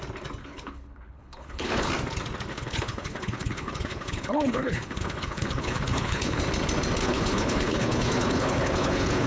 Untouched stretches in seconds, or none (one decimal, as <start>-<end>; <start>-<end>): 0.0-0.4; 1.9-2.5; 6.4-7.0